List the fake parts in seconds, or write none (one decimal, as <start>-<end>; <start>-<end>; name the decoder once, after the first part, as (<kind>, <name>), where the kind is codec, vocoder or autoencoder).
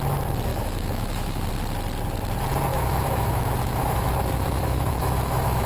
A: 0.5-1.5 (autoencoder, DAC-VAE); 2.7-5.7